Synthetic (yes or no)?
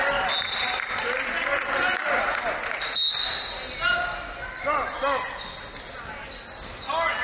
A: no